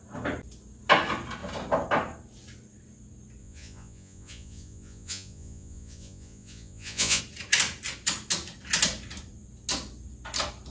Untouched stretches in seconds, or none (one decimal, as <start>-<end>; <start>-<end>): 0.0-3.4; 7.2-10.7